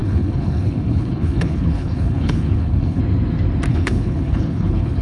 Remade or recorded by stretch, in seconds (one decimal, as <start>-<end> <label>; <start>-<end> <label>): 0.0-3.0 remade; 3.0-3.7 recorded; 3.7-5.0 remade